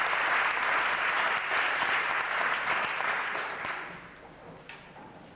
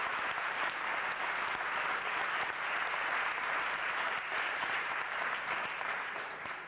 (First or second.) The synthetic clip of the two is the second